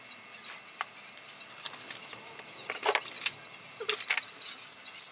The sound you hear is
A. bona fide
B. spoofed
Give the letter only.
A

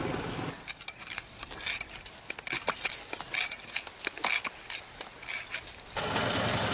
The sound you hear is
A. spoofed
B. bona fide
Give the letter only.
B